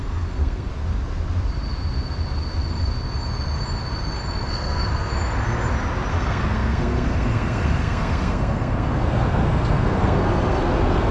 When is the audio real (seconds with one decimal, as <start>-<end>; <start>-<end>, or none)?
0.7-4.5; 5.1-6.1